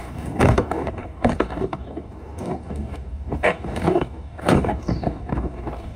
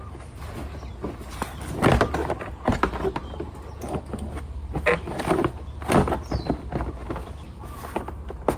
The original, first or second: second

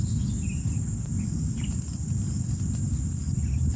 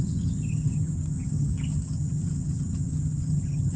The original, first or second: first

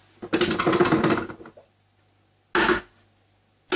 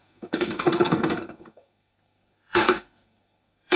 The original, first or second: first